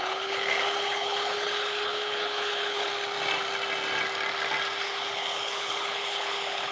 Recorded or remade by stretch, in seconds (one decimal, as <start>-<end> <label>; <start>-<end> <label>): 0.0-2.9 remade; 2.9-4.8 recorded; 4.8-6.7 remade